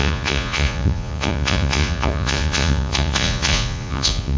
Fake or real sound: fake